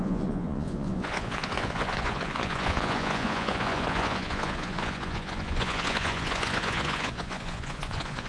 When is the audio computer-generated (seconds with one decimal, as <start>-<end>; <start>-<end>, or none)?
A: 0.0-8.3